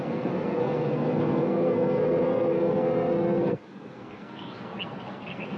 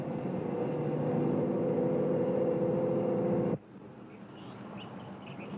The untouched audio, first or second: second